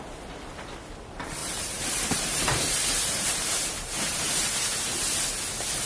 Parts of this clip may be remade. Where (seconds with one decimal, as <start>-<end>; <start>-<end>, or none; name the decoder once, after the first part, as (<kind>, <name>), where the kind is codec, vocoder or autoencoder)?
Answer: 1.4-4.9 (vocoder, BigVGAN v2)